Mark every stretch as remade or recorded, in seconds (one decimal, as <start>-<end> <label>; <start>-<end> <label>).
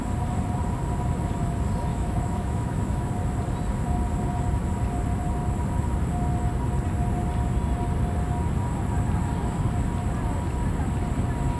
0.0-1.9 recorded; 1.9-3.1 remade; 3.1-11.6 recorded